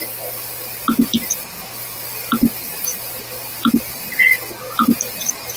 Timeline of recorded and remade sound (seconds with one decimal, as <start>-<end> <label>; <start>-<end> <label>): 0.0-2.9 recorded; 2.9-3.7 remade; 3.7-5.6 recorded